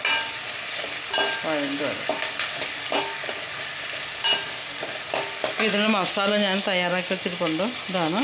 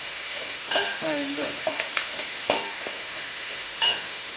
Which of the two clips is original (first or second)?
first